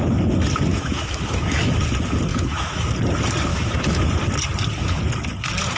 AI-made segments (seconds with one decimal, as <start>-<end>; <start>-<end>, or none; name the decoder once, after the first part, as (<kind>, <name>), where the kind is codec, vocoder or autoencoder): 0.7-1.6 (autoencoder, DAC-VAE); 2.3-2.9; 3.5-4.1